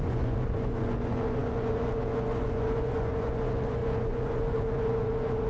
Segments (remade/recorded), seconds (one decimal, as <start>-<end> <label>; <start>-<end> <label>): 0.0-5.5 remade